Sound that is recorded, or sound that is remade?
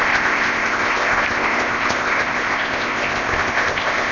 remade